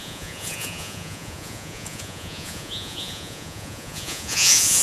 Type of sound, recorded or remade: remade